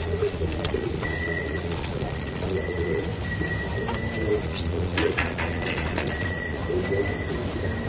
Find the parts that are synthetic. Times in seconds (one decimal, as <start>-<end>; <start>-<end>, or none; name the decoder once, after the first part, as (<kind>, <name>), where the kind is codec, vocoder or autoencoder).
0.0-3.1 (vocoder, Vocos); 4.4-6.6